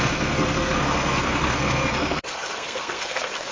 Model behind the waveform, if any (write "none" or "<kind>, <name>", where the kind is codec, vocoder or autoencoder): codec, SNAC